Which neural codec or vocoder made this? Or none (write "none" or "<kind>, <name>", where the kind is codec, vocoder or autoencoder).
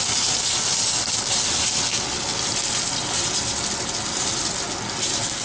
none